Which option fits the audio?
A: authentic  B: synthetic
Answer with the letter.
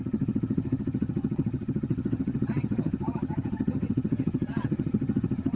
B